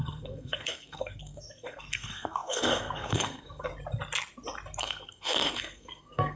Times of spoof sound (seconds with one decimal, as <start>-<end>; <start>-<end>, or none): 0.0-3.7; 4.8-6.4